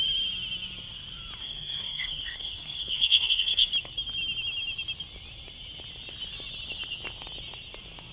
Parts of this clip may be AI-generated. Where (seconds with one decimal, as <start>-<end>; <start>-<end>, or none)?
1.4-3.7

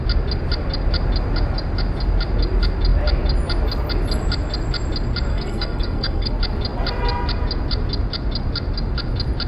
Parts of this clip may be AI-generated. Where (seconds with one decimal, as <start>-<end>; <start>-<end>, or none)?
5.3-6.3

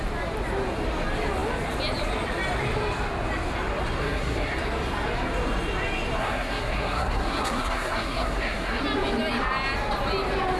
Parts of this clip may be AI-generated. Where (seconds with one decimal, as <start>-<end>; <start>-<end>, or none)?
4.0-4.5; 6.2-8.8

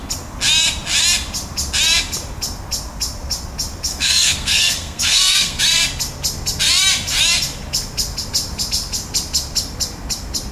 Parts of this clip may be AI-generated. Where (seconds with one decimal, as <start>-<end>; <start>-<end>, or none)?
3.9-5.6

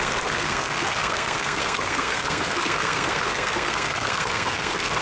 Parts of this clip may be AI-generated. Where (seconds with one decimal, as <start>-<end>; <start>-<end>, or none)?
0.0-5.0

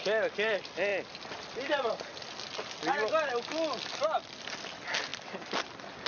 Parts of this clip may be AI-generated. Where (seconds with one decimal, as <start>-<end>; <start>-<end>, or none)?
none